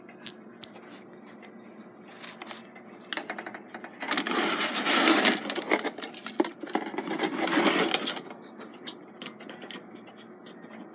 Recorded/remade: recorded